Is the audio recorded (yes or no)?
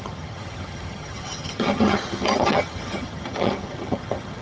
no